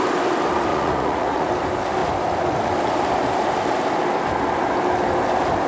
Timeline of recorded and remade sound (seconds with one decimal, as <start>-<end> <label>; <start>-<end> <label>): 0.0-0.7 recorded; 0.7-1.5 remade; 1.5-5.7 recorded